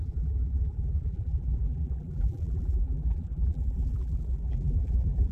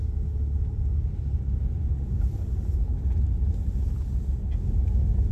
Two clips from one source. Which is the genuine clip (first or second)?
second